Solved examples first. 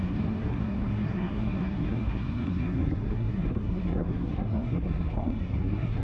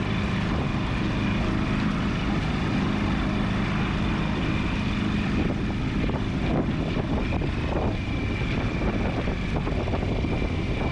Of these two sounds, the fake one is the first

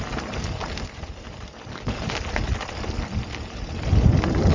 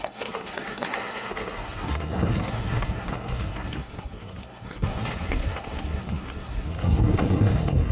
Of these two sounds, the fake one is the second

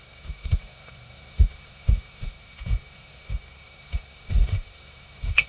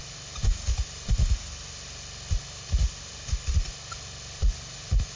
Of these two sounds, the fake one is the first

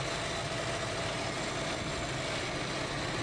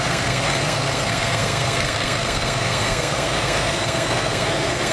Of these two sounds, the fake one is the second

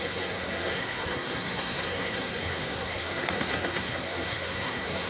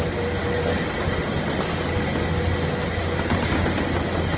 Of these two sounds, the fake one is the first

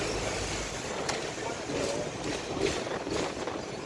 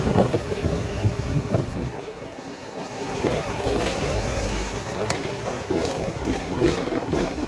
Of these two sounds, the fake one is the second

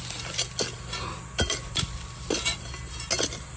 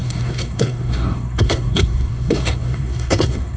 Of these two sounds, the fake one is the second